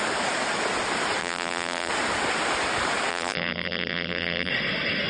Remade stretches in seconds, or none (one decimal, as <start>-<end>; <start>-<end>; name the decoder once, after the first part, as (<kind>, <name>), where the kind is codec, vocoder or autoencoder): 1.2-1.9 (vocoder, BigVGAN v2); 3.1-4.5